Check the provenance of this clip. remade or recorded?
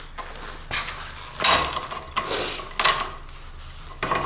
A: recorded